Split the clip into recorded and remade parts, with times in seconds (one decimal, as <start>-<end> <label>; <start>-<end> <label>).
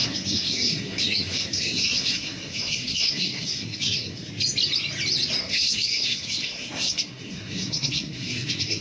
0.0-4.3 remade; 4.3-5.4 recorded; 5.4-8.8 remade